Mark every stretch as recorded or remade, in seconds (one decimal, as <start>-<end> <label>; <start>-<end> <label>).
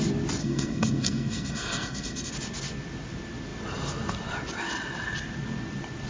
0.0-0.4 recorded; 0.4-2.3 remade; 2.3-6.1 recorded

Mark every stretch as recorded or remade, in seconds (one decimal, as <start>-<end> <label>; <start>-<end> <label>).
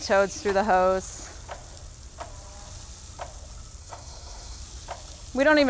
0.0-3.8 recorded; 3.8-4.6 remade; 4.6-5.7 recorded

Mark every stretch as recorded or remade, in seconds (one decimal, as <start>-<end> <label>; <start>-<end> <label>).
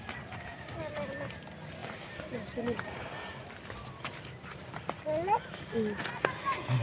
0.0-6.8 recorded